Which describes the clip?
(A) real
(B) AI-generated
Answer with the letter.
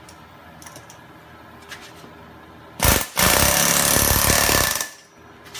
A